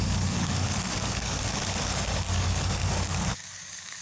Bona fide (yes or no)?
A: no